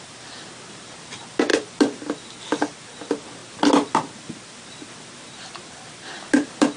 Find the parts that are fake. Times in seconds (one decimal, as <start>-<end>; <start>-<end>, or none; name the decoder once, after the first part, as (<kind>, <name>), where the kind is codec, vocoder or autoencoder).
none